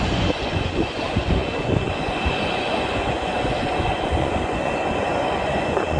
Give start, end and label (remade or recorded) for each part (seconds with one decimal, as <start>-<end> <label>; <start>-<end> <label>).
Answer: 0.0-6.0 remade